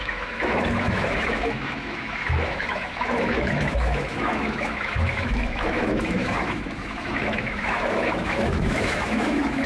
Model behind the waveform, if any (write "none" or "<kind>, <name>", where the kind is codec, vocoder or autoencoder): autoencoder, DAC-VAE